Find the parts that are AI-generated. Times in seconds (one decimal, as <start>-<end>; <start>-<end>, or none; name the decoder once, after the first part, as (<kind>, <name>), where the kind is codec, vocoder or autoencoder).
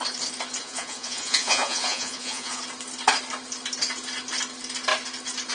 0.6-2.6 (vocoder, Vocos)